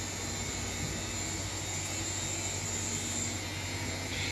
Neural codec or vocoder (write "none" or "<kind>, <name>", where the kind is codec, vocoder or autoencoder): none